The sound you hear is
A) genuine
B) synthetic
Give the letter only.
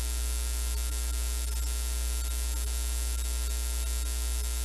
A